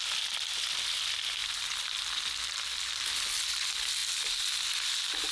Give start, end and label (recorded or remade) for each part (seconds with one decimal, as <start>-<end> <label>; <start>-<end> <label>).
0.0-5.3 recorded